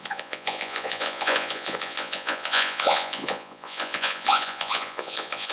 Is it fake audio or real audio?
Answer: fake